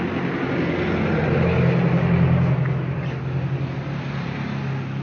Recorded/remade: recorded